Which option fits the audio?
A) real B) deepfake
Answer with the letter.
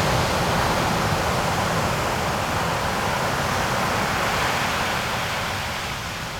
A